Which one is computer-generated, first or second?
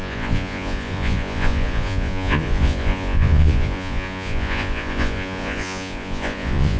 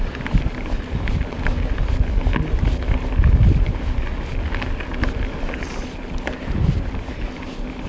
first